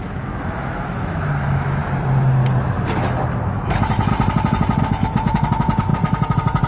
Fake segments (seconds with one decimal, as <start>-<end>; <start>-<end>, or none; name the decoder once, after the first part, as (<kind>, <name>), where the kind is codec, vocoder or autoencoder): 0.0-1.8 (autoencoder, DAC-VAE); 2.8-4.1; 4.8-6.7